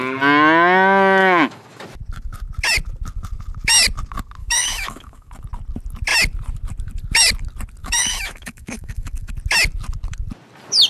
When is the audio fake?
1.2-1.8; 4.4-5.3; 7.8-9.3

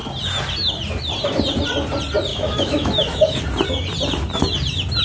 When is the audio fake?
2.3-3.4